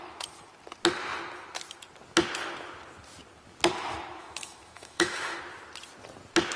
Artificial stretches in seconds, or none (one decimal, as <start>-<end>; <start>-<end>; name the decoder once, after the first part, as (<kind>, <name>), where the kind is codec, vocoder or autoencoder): 4.2-5.4 (autoencoder, DAC-VAE)